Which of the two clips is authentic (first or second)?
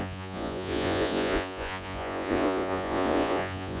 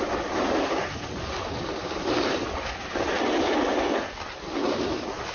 second